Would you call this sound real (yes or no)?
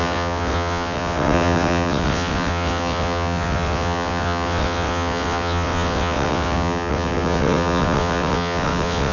no